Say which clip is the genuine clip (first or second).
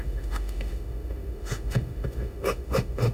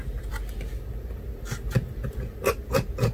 second